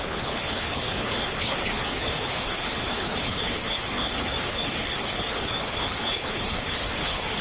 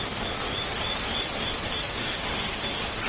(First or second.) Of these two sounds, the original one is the second